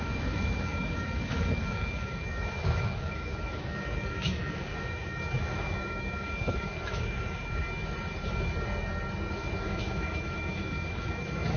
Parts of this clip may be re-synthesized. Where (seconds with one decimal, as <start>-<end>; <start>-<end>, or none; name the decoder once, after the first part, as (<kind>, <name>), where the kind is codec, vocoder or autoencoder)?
0.0-7.6 (autoencoder, DAC-VAE); 9.3-11.6